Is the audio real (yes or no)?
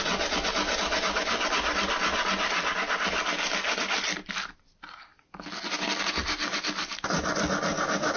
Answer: yes